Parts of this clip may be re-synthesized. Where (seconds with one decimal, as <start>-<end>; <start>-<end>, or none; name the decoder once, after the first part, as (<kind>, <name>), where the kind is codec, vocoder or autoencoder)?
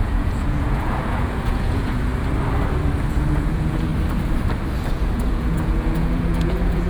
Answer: 0.0-2.1 (vocoder, Vocos); 3.1-3.9; 4.9-6.9